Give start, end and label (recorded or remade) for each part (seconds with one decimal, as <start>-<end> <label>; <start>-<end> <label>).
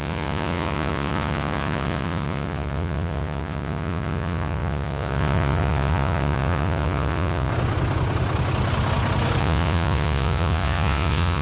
0.0-7.5 remade; 7.5-9.4 recorded; 9.4-11.4 remade